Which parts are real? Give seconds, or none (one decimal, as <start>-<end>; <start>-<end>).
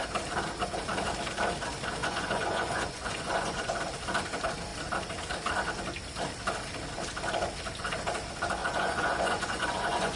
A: 0.0-2.0; 3.8-8.6